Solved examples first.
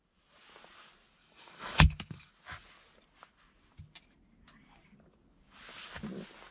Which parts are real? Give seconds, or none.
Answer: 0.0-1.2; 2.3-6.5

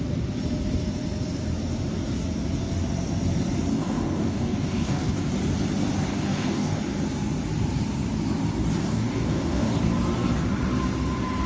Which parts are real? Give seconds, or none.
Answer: 0.0-3.7; 5.3-6.1; 6.8-8.8; 9.7-11.5

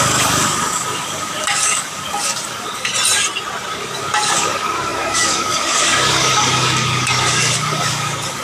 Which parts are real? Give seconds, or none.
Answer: 2.9-3.7